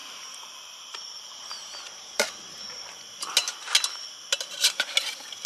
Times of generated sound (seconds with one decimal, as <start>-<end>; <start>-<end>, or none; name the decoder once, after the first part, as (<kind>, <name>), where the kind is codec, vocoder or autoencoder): 0.0-2.6 (vocoder, BigVGAN v2)